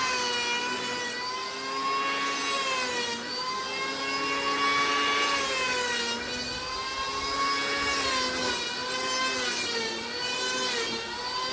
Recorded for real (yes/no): yes